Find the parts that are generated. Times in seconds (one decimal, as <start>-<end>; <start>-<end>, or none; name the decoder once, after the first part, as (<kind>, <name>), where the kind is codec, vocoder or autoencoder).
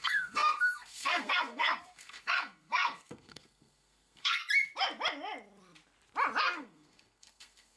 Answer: 0.0-4.4 (codec, SNAC); 6.4-7.8